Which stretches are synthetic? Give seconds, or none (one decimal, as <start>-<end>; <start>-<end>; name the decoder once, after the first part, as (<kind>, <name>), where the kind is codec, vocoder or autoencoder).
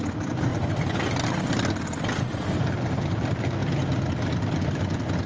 none